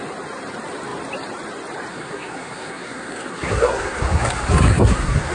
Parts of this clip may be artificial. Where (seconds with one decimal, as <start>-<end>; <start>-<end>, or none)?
1.9-5.3

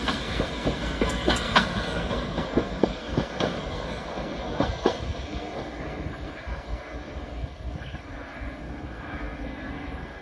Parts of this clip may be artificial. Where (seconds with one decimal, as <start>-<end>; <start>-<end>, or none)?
0.0-10.2